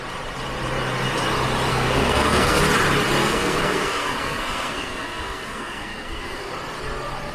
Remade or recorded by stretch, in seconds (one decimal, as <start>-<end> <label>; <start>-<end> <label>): 0.0-1.7 recorded; 1.7-2.6 remade; 2.6-3.2 recorded; 3.2-6.5 remade; 6.5-7.3 recorded